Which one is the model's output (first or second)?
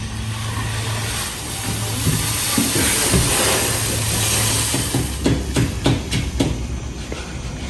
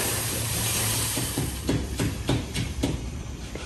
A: second